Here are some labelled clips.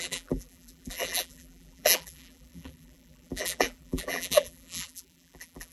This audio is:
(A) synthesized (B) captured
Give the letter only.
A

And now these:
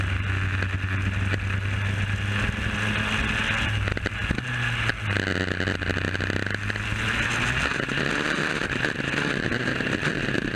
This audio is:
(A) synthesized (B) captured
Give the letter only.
B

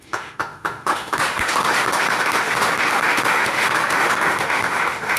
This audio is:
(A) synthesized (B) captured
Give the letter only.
A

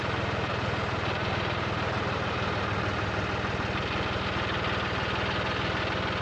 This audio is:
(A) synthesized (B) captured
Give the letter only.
B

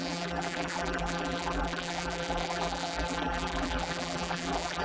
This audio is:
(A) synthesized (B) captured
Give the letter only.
A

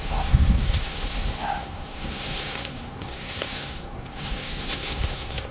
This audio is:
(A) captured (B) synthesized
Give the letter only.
B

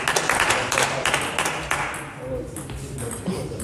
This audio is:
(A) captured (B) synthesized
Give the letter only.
A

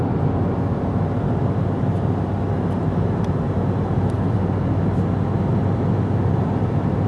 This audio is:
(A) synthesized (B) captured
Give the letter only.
B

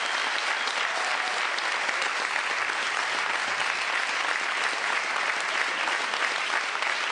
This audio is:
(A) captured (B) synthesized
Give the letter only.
A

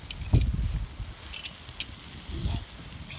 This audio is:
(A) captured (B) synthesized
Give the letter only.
A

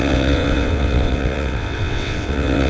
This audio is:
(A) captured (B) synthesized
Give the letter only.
B